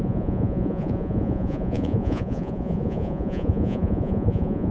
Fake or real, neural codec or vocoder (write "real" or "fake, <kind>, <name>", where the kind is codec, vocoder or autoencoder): fake, vocoder, Vocos